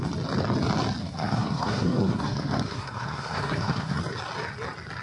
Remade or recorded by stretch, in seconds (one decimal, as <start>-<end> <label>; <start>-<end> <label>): 0.0-1.0 recorded; 1.0-4.0 remade; 4.0-5.0 recorded